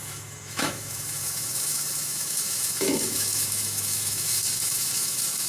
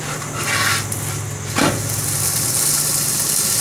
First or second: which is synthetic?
first